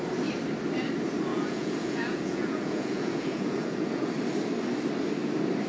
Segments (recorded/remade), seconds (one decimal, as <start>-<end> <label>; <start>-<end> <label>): 0.0-1.3 recorded; 1.3-4.1 remade; 4.1-5.7 recorded